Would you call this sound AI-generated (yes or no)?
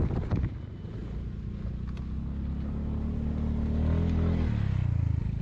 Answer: no